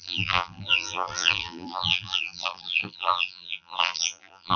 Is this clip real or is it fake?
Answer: fake